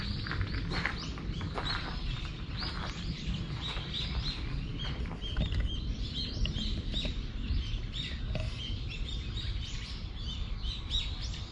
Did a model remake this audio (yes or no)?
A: yes